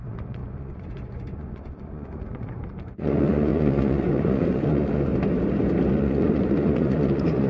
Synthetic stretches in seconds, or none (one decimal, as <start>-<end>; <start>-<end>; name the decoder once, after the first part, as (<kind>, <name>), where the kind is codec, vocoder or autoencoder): 0.0-5.1 (vocoder, Vocos); 5.9-7.5